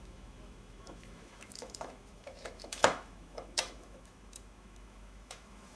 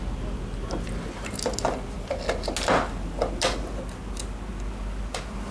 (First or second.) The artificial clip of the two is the first